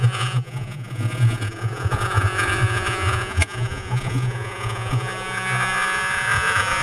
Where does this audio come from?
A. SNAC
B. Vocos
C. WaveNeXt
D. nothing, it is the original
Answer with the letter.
B